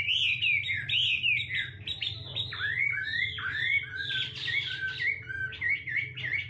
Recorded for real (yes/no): yes